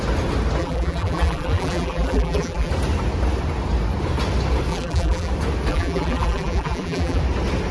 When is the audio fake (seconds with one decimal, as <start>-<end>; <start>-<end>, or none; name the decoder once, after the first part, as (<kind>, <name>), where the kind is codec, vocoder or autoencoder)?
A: 0.6-2.7 (vocoder, BigVGAN v2); 4.7-5.3; 5.7-7.2